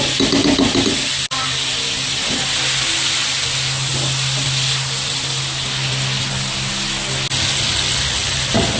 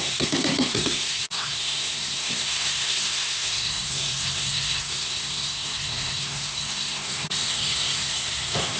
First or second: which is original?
first